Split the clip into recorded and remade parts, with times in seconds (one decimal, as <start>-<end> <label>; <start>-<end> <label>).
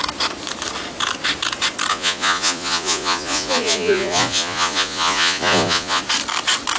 0.0-1.9 recorded; 1.9-6.0 remade; 6.0-6.8 recorded